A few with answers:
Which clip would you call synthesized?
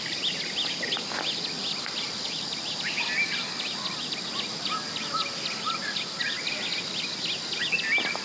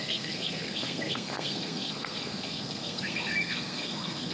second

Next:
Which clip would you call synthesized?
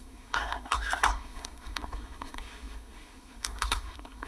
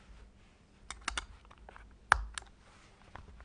first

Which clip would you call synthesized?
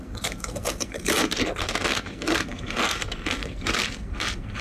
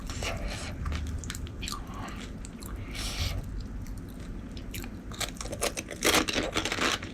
first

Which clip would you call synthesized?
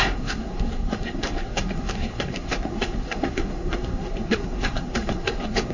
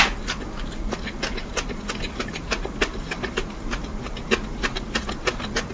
first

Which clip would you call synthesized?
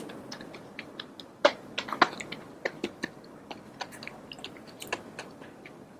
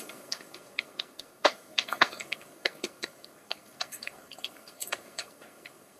second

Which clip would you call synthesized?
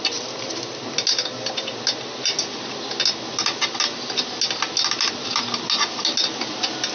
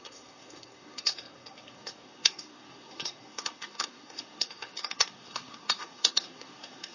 second